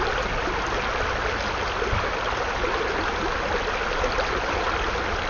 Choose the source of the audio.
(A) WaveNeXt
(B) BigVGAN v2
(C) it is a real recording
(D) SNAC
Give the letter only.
C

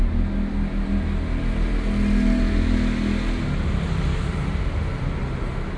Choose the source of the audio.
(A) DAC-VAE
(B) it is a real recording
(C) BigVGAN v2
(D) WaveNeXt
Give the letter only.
B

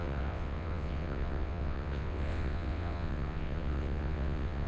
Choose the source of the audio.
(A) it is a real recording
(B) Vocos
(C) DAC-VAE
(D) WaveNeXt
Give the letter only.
D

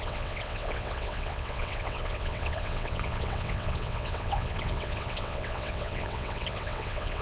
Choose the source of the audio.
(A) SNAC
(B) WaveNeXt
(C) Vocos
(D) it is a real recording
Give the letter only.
B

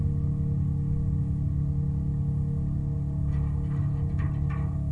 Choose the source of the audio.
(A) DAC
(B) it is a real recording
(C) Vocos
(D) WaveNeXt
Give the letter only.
B